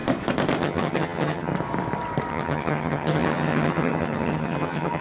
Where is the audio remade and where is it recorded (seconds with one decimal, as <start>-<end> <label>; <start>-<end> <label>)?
0.0-0.6 recorded; 0.6-1.5 remade; 1.5-2.3 recorded; 2.3-5.0 remade